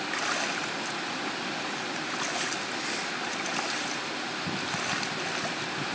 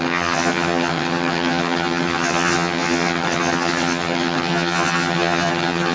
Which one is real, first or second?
first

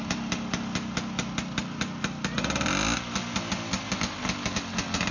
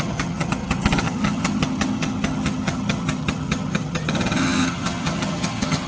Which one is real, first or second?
first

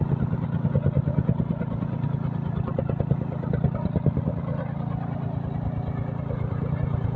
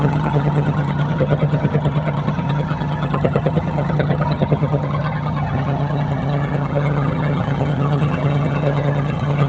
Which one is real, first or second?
first